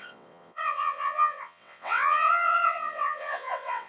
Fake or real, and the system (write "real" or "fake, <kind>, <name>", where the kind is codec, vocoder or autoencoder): fake, vocoder, WaveNeXt